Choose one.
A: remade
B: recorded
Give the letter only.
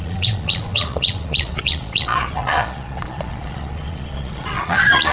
A